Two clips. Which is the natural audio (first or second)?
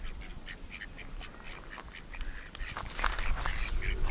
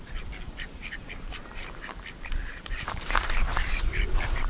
first